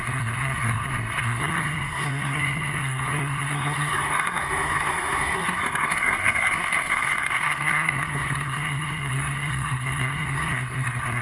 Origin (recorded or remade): remade